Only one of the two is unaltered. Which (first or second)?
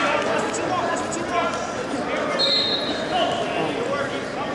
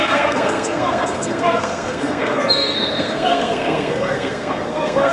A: first